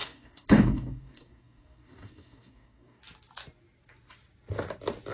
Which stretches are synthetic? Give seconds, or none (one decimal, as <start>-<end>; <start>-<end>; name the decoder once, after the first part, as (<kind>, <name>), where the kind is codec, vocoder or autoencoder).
0.0-3.0 (codec, DAC)